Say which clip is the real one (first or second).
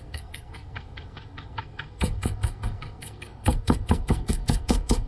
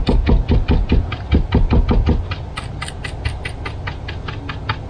second